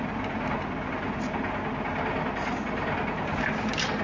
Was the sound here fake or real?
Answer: real